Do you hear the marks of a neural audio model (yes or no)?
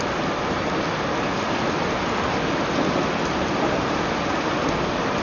no